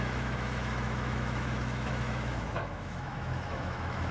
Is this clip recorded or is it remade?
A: remade